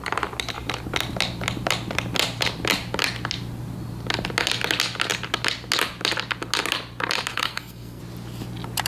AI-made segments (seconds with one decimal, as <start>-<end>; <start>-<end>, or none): 7.3-8.0